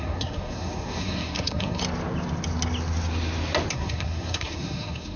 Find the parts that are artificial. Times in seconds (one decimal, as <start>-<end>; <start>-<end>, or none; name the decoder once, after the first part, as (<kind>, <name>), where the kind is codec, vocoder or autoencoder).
0.0-1.8 (codec, SNAC); 3.7-5.2